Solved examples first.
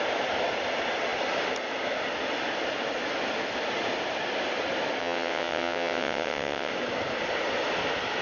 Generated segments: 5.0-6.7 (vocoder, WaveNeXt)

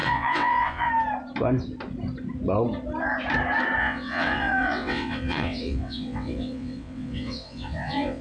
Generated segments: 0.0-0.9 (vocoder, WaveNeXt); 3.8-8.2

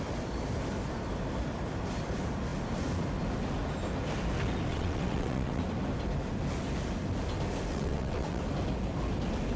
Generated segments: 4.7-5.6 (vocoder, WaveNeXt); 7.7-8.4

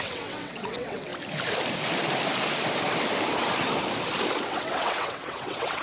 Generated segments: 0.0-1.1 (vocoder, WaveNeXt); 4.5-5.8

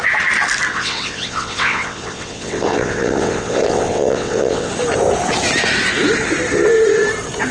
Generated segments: 0.7-4.7 (vocoder, WaveNeXt)